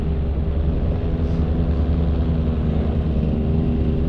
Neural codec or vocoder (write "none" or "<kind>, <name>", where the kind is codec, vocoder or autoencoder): none